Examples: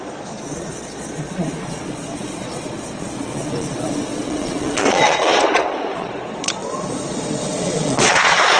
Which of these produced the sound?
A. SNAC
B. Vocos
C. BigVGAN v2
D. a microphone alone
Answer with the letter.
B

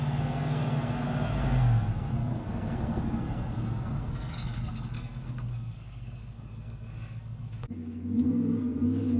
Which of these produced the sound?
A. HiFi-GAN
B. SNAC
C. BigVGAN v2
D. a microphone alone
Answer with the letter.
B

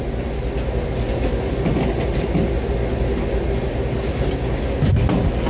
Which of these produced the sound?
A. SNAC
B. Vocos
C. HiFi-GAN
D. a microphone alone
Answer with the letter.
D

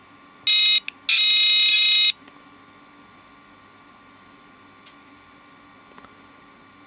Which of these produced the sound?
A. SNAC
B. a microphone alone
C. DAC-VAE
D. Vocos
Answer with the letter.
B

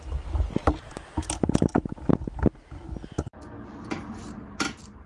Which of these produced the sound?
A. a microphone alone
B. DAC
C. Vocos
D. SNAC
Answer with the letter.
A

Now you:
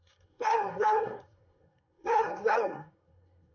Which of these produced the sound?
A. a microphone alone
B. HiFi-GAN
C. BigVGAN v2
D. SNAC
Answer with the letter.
D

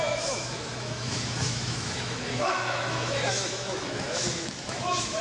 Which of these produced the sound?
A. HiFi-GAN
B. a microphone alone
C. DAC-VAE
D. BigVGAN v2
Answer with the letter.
C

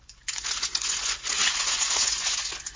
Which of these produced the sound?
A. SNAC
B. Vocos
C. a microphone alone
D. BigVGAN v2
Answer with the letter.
B